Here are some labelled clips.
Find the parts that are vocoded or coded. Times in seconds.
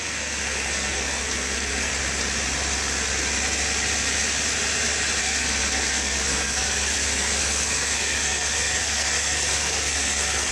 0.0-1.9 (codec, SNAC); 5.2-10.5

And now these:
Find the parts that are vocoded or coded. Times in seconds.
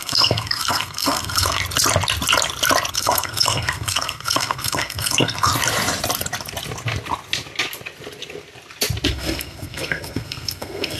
0.0-1.6 (codec, SNAC); 2.9-5.5; 9.1-11.0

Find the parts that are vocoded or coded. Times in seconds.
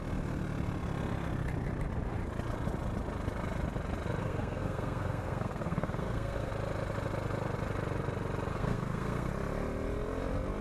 4.2-6.5 (codec, SNAC); 8.5-9.3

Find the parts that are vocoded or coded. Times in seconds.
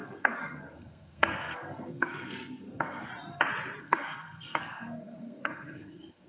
0.0-3.1 (codec, SNAC); 3.8-6.3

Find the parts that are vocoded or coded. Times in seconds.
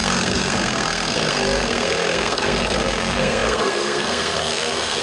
0.0-5.0 (codec, SNAC)